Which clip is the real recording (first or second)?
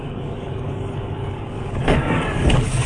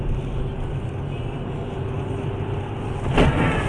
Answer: second